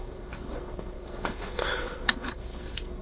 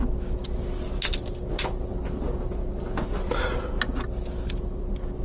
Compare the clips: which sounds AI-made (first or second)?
first